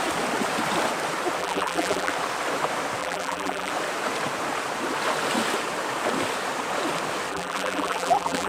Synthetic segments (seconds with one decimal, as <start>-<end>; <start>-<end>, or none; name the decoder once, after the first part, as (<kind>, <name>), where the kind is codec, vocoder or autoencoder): 1.4-2.1 (vocoder, BigVGAN v2); 3.0-3.7; 7.3-8.5